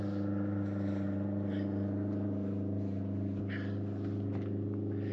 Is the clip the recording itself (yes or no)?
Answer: yes